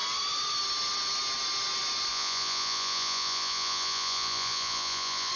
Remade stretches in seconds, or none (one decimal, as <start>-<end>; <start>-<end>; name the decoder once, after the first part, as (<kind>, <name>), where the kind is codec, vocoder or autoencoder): 2.1-5.3 (vocoder, Vocos)